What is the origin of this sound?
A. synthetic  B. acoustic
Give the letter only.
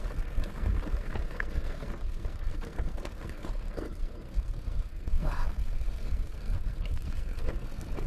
A